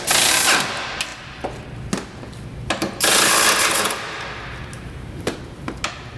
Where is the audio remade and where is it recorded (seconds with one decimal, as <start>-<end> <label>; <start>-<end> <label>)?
0.0-4.7 recorded; 4.7-5.4 remade; 5.4-6.2 recorded